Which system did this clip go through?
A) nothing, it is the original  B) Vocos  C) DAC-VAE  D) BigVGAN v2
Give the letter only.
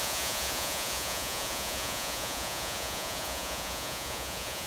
B